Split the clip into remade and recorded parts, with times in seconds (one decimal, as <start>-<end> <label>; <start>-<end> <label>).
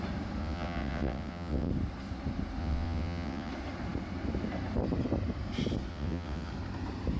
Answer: 0.0-0.4 recorded; 0.4-1.7 remade; 1.7-2.6 recorded; 2.6-3.5 remade; 3.5-5.9 recorded; 5.9-6.5 remade; 6.5-7.2 recorded